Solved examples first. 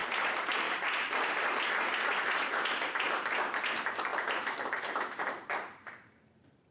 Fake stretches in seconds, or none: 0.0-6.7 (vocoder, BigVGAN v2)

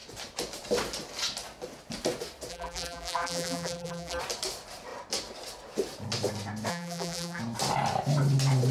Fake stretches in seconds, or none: 2.5-4.2 (vocoder, BigVGAN v2); 6.7-7.4

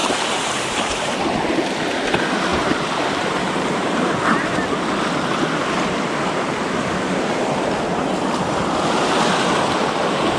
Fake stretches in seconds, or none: 0.0-1.1 (vocoder, BigVGAN v2); 2.5-4.2

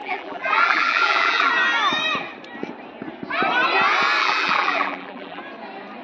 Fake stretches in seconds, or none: 0.0-1.5 (vocoder, BigVGAN v2); 4.2-5.4

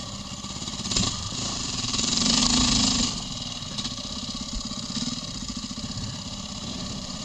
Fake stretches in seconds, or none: 1.0-2.4 (vocoder, BigVGAN v2); 6.7-7.2

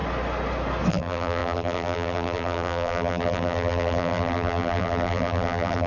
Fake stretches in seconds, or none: 0.9-5.9 (vocoder, BigVGAN v2)

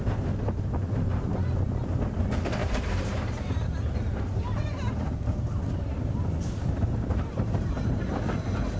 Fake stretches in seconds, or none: 2.6-3.4 (vocoder, BigVGAN v2); 4.1-8.1